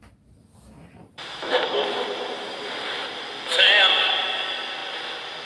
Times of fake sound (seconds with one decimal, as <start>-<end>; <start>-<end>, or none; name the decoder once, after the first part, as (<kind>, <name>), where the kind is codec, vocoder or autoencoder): 1.0-4.2 (vocoder, BigVGAN v2)